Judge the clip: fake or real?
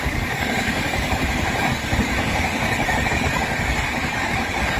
fake